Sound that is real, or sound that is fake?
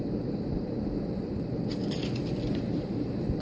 fake